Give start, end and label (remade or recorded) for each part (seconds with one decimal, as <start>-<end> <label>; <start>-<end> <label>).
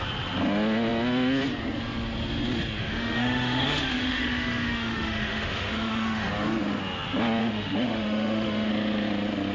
0.0-2.8 recorded; 2.8-6.3 remade; 6.3-7.4 recorded; 7.4-8.7 remade; 8.7-9.5 recorded